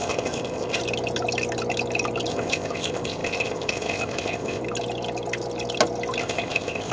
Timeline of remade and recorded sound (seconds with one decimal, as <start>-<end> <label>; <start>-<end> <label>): 0.0-0.8 remade; 0.8-2.3 recorded; 2.3-4.6 remade; 4.6-6.2 recorded; 6.2-6.9 remade